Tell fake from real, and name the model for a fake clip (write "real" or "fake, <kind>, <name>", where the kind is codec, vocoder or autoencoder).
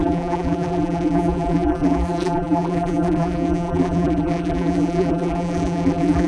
fake, vocoder, BigVGAN v2